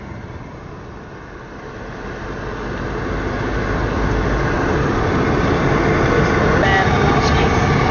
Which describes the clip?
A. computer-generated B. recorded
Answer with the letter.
B